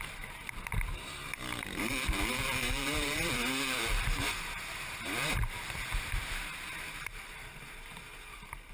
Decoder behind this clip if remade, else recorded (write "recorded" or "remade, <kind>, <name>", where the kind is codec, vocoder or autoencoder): remade, vocoder, BigVGAN v2